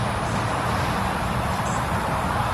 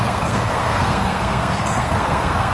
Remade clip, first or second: second